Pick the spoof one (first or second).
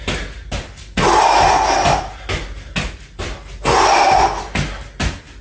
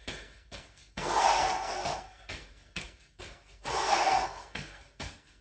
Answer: second